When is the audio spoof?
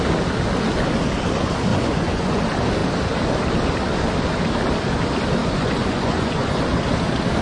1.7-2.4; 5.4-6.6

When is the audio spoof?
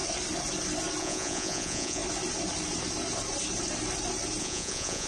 1.0-2.0; 4.4-5.1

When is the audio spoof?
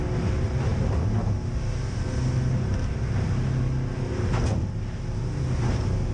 none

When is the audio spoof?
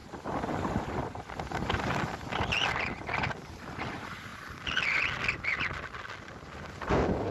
none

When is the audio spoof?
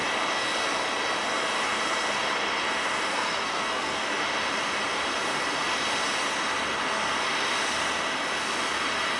3.1-4.0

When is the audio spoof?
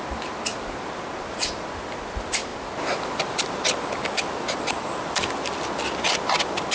none